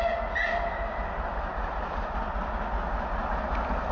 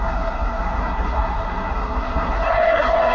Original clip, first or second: first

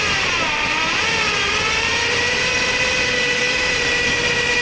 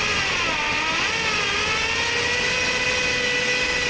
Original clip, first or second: second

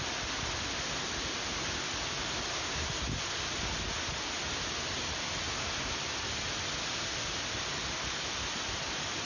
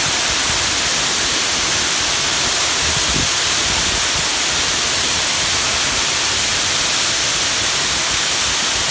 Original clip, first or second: first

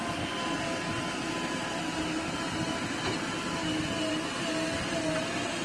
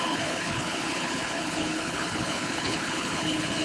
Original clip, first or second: first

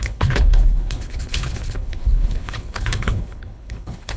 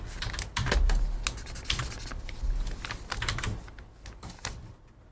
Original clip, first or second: second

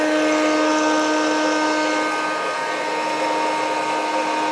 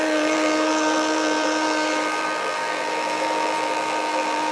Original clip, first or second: first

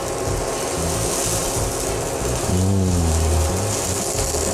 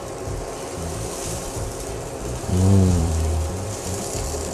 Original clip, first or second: first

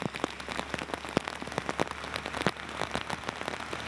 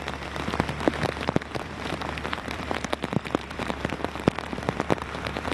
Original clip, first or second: first